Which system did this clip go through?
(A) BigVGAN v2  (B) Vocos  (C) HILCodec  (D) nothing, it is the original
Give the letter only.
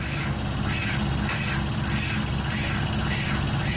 D